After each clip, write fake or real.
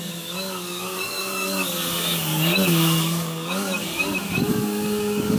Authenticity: fake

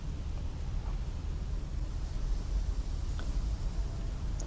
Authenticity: real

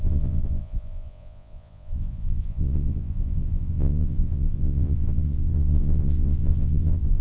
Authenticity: fake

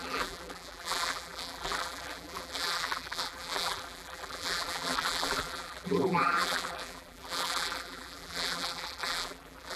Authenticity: fake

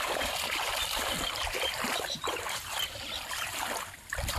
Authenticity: fake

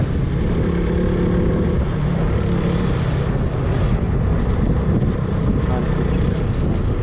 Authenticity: real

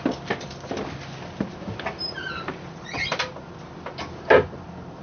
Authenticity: real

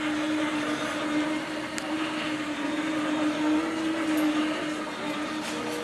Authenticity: real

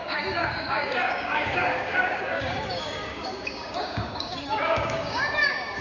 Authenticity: fake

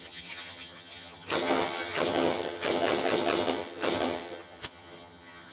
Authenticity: fake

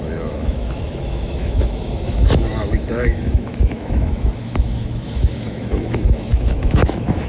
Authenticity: fake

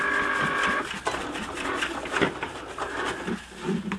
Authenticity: real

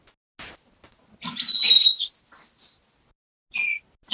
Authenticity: real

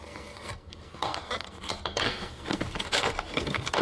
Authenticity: fake